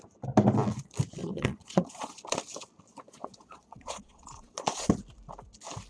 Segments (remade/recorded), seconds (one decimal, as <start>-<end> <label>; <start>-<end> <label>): 0.0-1.2 recorded; 1.2-2.2 remade; 2.2-2.9 recorded; 2.9-4.9 remade; 4.9-5.9 recorded

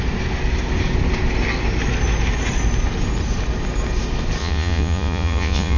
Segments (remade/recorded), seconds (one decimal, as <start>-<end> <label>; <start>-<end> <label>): 0.0-4.4 recorded; 4.4-5.8 remade

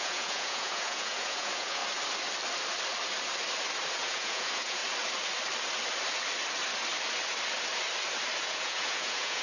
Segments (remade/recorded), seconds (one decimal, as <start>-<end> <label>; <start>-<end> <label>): 0.0-1.8 remade; 1.8-3.9 recorded; 3.9-4.8 remade; 4.8-8.4 recorded; 8.4-9.4 remade

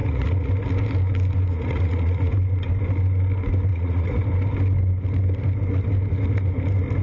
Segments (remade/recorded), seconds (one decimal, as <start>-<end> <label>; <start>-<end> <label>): 0.0-0.5 remade; 0.5-1.5 recorded; 1.5-2.3 remade; 2.3-3.7 recorded; 3.7-4.2 remade; 4.2-7.0 recorded